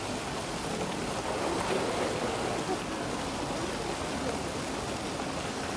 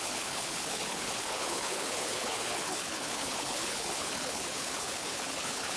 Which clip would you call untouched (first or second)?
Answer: first